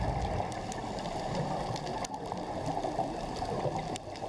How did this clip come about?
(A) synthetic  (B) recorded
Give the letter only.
B